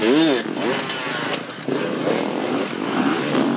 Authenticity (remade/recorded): recorded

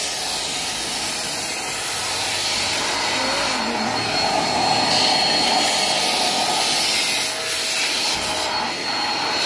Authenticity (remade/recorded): recorded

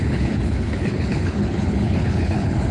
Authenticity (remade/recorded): remade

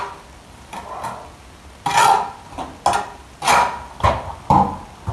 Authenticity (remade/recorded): recorded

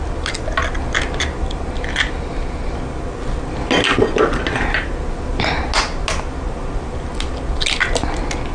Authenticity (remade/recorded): recorded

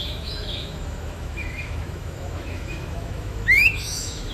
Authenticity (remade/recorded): remade